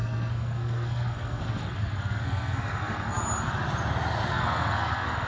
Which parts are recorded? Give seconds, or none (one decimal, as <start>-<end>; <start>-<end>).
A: 3.2-4.3